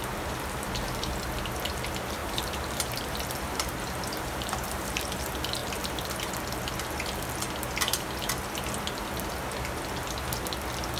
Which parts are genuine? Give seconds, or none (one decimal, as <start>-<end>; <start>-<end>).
0.0-2.2; 5.1-5.6; 6.3-11.0